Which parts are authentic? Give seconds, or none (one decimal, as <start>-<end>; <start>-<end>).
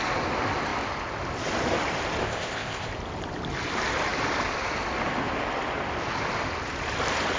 0.0-2.2; 2.9-7.4